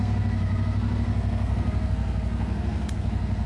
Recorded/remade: remade